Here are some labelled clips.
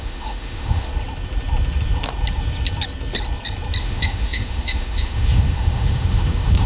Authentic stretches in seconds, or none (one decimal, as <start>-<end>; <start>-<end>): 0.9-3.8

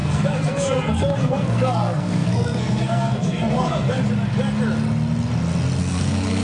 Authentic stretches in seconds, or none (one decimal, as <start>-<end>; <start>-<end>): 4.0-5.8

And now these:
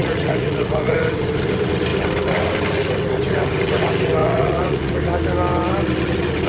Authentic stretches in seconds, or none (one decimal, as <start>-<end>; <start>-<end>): 1.0-4.2; 4.9-6.5